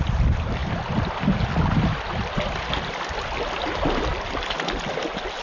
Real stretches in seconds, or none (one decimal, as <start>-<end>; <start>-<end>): 0.0-5.4